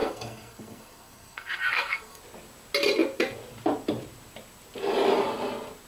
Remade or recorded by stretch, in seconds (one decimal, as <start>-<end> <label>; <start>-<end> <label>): 0.0-2.2 remade; 2.2-5.9 recorded